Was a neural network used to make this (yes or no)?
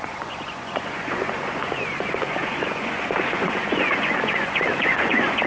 yes